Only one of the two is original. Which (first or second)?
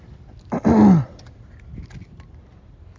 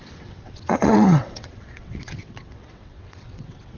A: first